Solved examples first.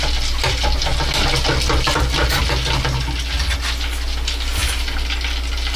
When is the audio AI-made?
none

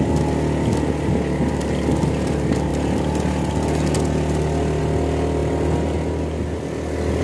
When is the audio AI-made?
none

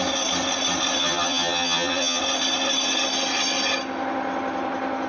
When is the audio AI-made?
1.0-2.2 (vocoder, HiFi-GAN)

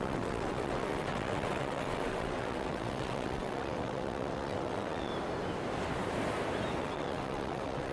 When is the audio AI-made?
0.0-5.1 (vocoder, WaveNeXt); 6.8-7.9

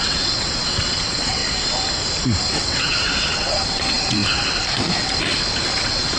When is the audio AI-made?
0.0-1.4 (vocoder, WaveNeXt); 2.4-4.2; 5.8-6.2